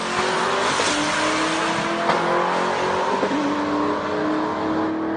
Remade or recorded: recorded